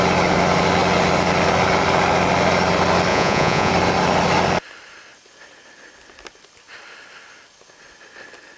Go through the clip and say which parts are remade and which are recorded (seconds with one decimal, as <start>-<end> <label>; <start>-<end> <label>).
0.0-3.1 recorded; 3.1-3.7 remade; 3.7-8.6 recorded

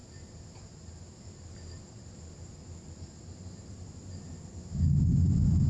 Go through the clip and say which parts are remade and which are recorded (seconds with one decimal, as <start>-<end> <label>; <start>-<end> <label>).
0.0-5.7 recorded